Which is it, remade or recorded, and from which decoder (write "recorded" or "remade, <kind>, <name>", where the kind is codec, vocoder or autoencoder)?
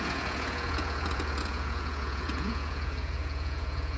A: remade, vocoder, Vocos